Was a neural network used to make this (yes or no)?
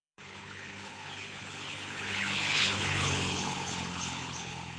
yes